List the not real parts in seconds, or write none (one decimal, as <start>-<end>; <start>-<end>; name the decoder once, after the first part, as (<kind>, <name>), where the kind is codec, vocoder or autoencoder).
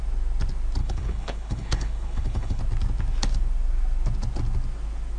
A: 0.8-2.6 (codec, HILCodec)